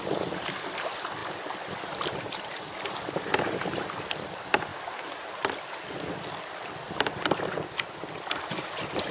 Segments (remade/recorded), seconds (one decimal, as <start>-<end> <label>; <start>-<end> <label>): 0.0-1.2 remade; 1.2-2.2 recorded; 2.2-9.1 remade